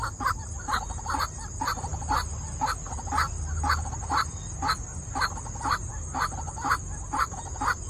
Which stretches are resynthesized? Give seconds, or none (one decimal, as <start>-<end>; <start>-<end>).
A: none